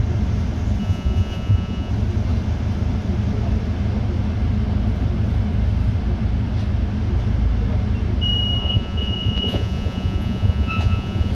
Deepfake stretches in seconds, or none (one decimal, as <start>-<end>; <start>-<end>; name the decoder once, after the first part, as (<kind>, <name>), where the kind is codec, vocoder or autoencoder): 0.8-1.9 (vocoder, Vocos); 8.6-11.3